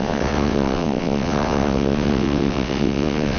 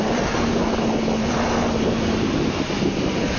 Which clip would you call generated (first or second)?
first